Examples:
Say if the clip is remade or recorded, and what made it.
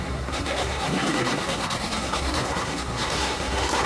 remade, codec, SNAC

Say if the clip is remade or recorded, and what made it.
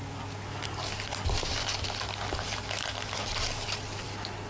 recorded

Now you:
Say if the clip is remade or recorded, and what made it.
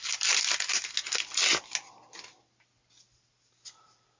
recorded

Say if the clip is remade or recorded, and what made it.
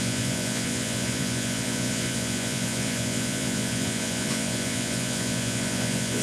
remade, vocoder, Vocos